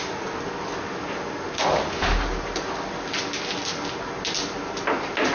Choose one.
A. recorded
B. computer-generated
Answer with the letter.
A